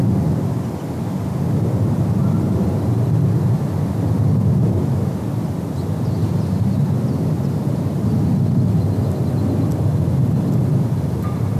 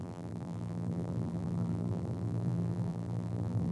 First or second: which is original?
first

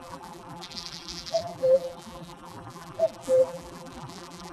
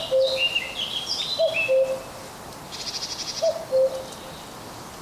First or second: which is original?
second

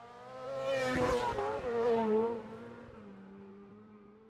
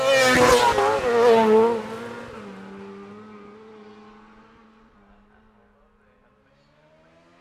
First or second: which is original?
second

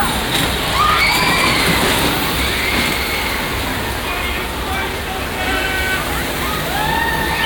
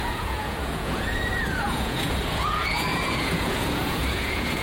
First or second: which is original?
first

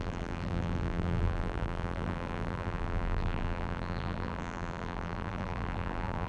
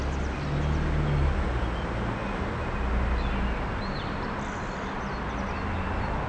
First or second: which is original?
second